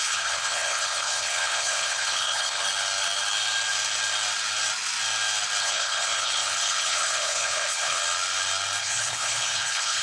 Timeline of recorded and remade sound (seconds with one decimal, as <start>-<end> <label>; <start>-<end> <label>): 0.0-2.6 remade; 2.6-5.6 recorded; 5.6-8.0 remade; 8.0-8.8 recorded; 8.8-10.0 remade